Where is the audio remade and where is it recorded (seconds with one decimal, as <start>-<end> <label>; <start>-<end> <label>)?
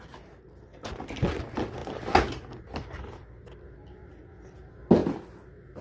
0.0-5.8 recorded